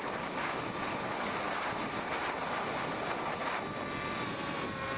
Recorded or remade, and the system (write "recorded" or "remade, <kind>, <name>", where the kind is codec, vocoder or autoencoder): recorded